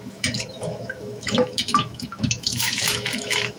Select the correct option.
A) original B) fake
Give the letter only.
B